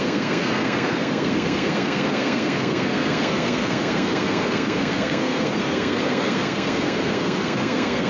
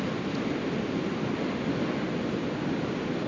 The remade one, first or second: first